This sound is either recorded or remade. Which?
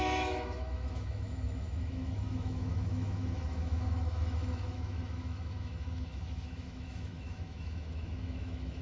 remade